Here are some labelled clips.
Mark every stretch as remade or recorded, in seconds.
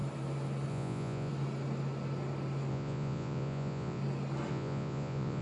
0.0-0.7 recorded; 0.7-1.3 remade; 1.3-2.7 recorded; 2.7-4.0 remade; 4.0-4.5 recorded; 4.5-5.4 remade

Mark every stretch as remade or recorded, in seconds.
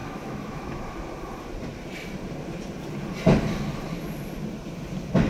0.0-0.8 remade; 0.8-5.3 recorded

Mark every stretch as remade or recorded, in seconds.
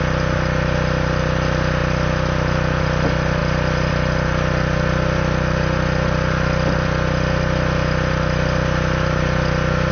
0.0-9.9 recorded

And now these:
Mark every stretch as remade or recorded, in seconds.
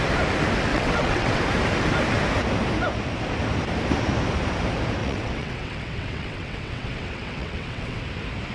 0.0-0.7 recorded; 0.7-1.4 remade; 1.4-5.0 recorded; 5.0-8.0 remade; 8.0-8.5 recorded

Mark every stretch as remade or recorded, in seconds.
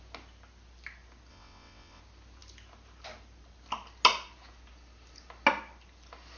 0.0-1.3 recorded; 1.3-2.0 remade; 2.0-6.4 recorded